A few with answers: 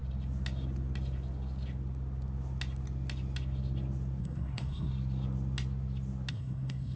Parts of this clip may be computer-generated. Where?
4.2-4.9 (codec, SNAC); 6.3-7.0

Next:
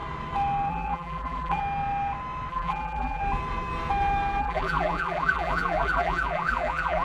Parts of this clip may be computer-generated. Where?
0.7-1.6 (vocoder, BigVGAN v2); 2.5-3.2; 4.4-7.0

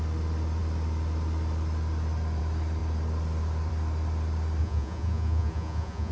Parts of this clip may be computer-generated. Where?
4.6-6.1 (vocoder, Vocos)

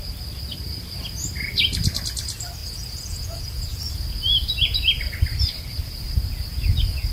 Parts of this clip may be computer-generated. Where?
2.6-3.8 (vocoder, Vocos)

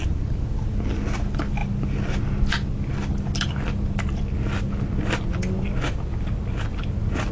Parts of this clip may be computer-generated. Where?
none